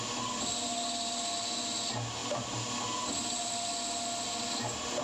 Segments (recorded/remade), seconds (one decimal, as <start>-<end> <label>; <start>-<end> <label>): 0.0-5.0 recorded